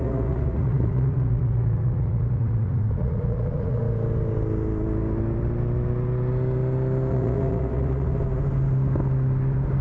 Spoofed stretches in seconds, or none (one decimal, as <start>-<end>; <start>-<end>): 0.0-3.8; 7.1-8.1